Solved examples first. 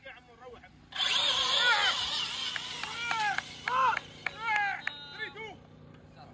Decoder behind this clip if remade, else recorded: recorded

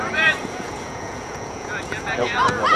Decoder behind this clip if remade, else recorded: remade, vocoder, Vocos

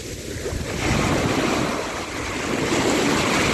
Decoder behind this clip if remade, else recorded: recorded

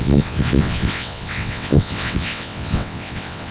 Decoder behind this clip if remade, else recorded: remade, vocoder, WaveNeXt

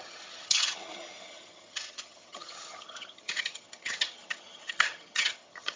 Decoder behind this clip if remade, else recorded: remade, vocoder, HiFi-GAN